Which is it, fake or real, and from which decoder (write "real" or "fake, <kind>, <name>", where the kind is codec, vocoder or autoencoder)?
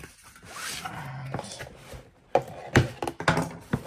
real